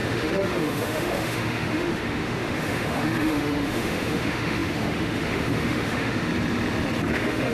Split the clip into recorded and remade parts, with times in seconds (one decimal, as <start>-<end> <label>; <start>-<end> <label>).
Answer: 0.0-6.3 remade; 6.3-7.1 recorded; 7.1-7.5 remade